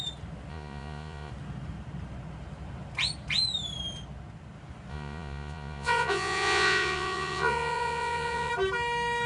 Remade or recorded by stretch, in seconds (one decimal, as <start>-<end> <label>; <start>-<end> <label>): 0.0-0.5 recorded; 0.5-1.3 remade; 1.3-4.9 recorded; 4.9-8.5 remade; 8.5-9.3 recorded